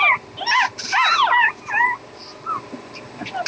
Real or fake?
real